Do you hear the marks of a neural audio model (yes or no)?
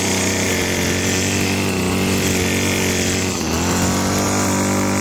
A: no